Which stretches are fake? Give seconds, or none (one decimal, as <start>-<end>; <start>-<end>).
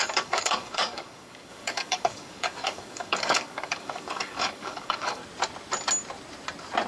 0.0-5.2